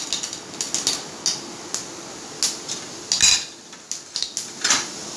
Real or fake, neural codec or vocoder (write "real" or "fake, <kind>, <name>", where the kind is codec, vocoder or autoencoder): real